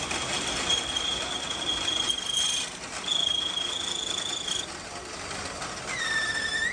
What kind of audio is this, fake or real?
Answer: real